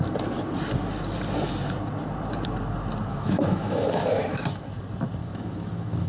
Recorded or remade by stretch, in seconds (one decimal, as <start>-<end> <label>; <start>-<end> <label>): 0.0-3.1 recorded; 3.1-4.6 remade; 4.6-5.2 recorded; 5.2-6.1 remade